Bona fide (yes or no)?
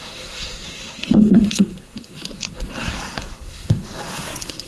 no